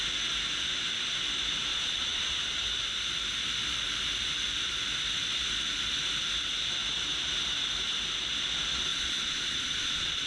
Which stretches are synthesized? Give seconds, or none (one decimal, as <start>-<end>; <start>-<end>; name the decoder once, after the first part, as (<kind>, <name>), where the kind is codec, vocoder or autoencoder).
1.7-2.5 (vocoder, Vocos); 8.9-10.3